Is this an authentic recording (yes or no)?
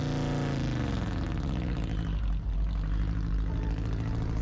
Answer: yes